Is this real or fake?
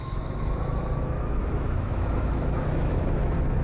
fake